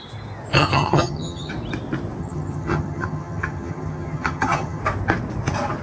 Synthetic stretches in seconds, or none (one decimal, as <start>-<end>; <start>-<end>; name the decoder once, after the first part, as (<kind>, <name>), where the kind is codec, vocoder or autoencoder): 0.6-1.5 (vocoder, HiFi-GAN); 2.2-4.8